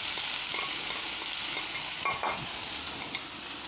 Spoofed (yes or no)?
no